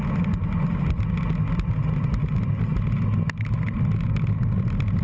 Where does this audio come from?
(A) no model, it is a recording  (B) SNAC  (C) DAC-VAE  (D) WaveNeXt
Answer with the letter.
A